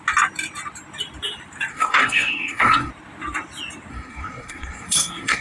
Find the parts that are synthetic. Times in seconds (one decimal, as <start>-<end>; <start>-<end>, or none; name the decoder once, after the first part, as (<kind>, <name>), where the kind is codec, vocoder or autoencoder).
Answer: 1.7-2.9 (codec, SNAC); 3.9-5.4